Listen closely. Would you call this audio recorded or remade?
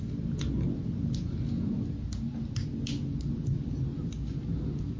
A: recorded